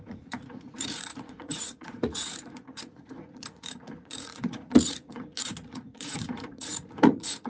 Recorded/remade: remade